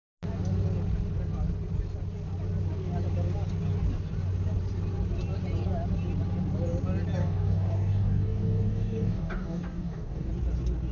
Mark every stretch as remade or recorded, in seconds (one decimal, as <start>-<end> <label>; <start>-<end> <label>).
0.0-7.2 recorded; 7.2-10.3 remade; 10.3-10.9 recorded